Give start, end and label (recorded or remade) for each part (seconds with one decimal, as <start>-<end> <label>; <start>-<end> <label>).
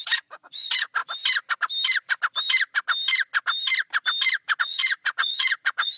0.0-1.0 remade; 1.0-4.6 recorded; 4.6-6.0 remade